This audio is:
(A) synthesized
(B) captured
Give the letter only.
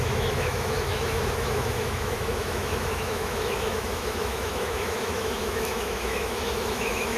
A